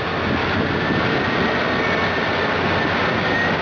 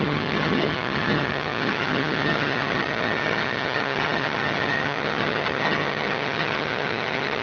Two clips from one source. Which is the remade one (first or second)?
second